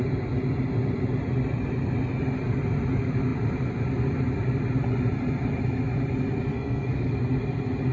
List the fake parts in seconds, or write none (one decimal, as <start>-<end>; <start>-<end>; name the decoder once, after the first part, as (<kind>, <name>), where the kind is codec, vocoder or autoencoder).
6.5-7.1 (codec, SNAC)